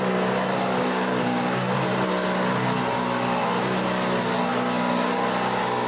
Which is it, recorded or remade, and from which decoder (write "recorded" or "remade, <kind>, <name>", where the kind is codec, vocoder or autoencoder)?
recorded